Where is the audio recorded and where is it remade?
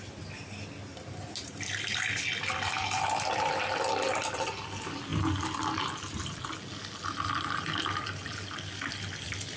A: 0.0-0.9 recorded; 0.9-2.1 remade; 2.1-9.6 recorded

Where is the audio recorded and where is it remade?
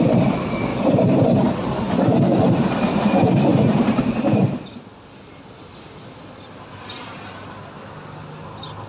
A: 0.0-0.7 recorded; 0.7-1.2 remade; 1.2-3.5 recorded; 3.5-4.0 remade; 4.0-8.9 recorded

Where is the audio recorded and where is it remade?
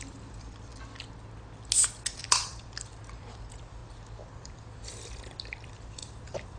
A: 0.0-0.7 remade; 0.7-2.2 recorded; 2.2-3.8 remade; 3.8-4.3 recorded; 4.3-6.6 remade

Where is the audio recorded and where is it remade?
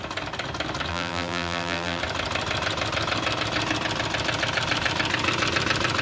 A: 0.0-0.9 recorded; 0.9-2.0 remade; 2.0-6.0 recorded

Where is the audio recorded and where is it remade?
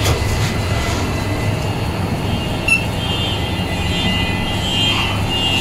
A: 0.0-5.6 recorded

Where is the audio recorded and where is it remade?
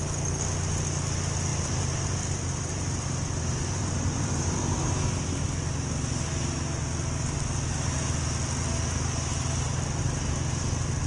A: 0.0-1.5 recorded; 1.5-5.6 remade; 5.6-9.3 recorded; 9.3-10.0 remade; 10.0-11.1 recorded